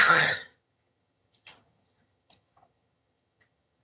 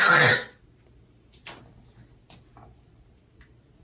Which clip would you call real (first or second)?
second